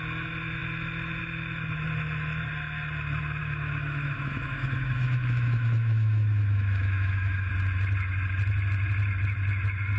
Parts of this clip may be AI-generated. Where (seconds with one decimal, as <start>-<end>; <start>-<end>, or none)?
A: 3.4-7.5